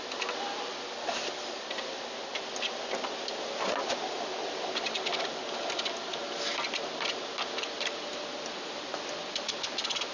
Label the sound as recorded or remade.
recorded